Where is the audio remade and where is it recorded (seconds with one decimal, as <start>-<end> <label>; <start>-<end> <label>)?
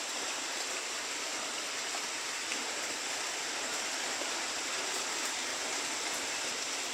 0.0-5.5 recorded; 5.5-6.5 remade; 6.5-6.9 recorded